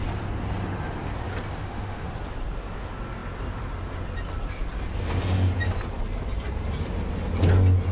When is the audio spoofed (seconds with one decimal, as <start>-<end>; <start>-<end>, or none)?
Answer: 1.6-2.1